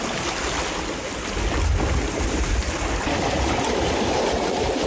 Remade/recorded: recorded